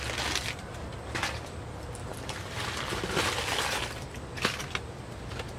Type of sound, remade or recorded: recorded